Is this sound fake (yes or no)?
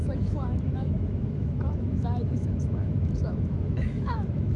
yes